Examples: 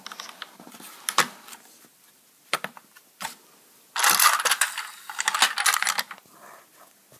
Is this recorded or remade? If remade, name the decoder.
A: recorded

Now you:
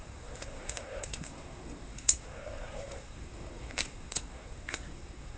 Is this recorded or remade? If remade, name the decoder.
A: remade, codec, SNAC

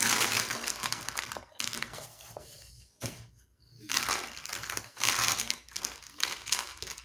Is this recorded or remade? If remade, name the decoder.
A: remade, codec, SNAC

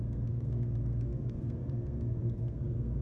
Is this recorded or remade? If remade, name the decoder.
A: remade, codec, SNAC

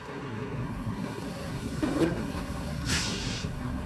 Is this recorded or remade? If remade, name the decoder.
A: remade, codec, SNAC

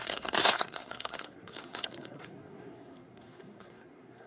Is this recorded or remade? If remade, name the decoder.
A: remade, codec, SNAC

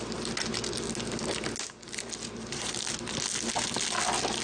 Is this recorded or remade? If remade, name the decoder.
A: recorded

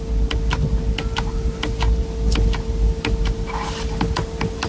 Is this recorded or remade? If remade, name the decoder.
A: recorded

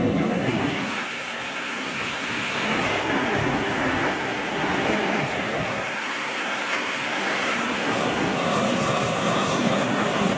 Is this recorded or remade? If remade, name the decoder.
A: remade, codec, SNAC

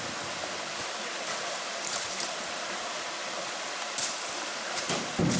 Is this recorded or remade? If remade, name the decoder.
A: recorded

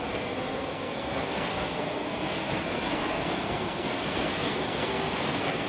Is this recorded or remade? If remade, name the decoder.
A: remade, codec, SNAC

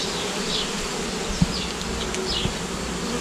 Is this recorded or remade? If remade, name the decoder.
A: recorded